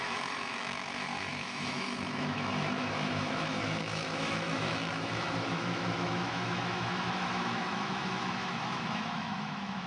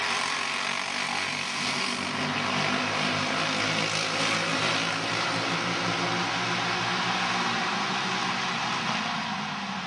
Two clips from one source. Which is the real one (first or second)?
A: second